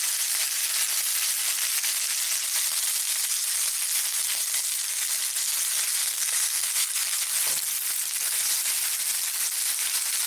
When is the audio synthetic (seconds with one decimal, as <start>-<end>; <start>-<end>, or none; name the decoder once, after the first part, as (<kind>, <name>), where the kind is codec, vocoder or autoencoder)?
6.0-6.9 (codec, SNAC)